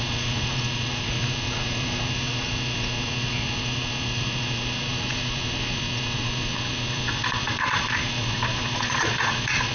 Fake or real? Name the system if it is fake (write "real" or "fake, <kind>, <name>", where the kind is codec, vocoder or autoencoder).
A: fake, vocoder, Vocos